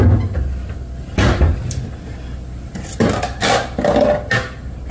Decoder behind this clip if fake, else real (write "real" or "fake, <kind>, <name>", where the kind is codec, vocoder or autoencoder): real